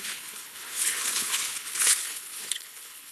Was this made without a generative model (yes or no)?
no